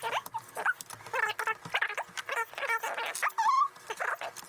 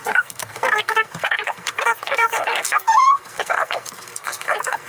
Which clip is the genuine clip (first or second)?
first